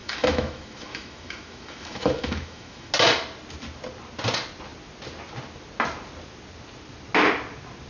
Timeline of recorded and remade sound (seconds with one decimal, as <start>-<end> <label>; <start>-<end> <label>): 0.0-2.9 remade; 2.9-7.9 recorded